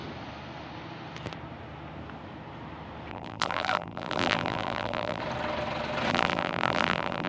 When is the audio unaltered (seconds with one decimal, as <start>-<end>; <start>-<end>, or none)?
0.0-3.1; 5.2-6.1